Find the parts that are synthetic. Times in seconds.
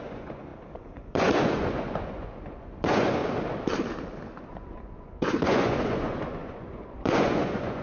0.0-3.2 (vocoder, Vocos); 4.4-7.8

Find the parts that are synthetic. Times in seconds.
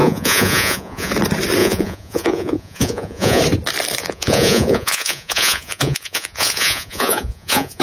0.0-1.1 (vocoder, Vocos); 1.6-3.4; 4.0-7.8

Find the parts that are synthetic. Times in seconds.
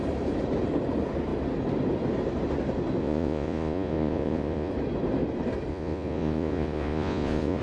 3.0-4.7 (vocoder, Vocos); 5.7-7.6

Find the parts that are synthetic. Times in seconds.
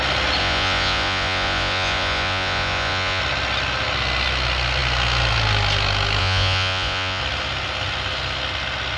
0.4-3.2 (vocoder, Vocos); 6.2-7.2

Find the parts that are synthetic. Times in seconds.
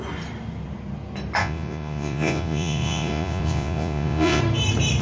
1.4-4.4 (vocoder, Vocos)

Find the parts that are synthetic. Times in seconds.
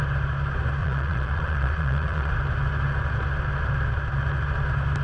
0.8-2.3 (vocoder, Vocos)